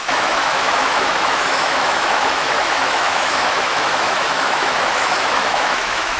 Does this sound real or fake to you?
fake